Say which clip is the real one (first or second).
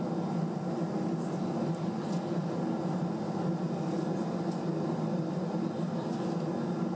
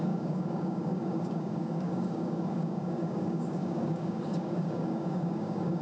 first